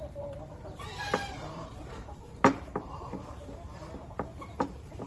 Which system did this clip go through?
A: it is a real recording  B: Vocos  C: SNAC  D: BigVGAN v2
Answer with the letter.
D